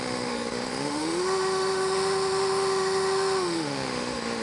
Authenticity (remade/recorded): remade